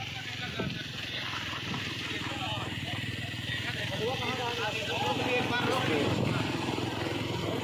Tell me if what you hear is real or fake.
real